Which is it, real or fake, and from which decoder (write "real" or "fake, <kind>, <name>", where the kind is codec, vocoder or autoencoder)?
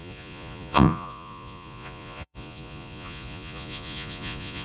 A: fake, vocoder, Vocos